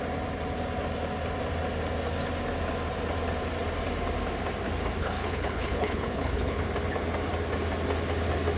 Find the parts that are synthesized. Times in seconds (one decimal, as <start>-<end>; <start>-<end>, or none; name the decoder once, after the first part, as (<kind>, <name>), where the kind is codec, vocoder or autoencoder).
5.0-6.6 (codec, HILCodec)